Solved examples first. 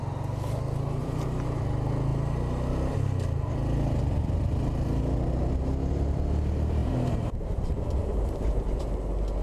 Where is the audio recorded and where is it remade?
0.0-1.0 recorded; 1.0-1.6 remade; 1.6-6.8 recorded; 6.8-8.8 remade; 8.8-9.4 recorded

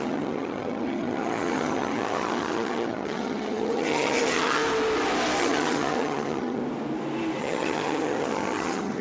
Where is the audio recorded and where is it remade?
0.0-4.6 remade; 4.6-5.4 recorded; 5.4-6.6 remade; 6.6-7.4 recorded; 7.4-9.0 remade

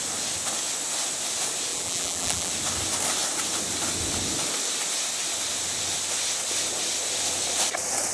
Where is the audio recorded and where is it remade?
0.0-1.7 recorded; 1.7-2.5 remade; 2.5-8.1 recorded

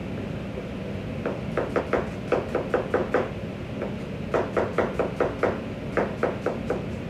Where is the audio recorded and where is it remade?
0.0-7.1 recorded